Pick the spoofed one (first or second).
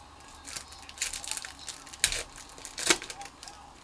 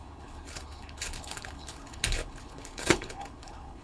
second